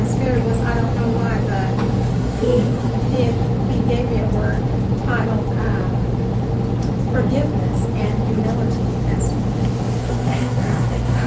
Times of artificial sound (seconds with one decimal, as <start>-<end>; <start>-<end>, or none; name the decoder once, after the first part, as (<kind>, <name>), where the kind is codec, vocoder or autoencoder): 2.1-2.9 (codec, SNAC); 10.0-11.3